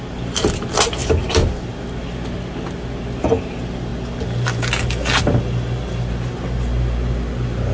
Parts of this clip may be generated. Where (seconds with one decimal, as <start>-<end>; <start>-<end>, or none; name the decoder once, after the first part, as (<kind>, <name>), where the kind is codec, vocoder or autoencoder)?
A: none